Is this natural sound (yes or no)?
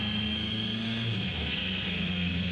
no